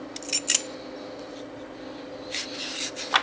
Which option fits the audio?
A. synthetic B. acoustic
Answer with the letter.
B